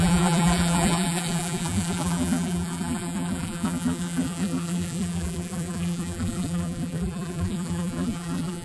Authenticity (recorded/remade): remade